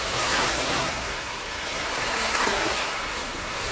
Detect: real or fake fake